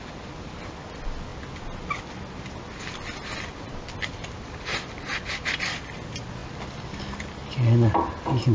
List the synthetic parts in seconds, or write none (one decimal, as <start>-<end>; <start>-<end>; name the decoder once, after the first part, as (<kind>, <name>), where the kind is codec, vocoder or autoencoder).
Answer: none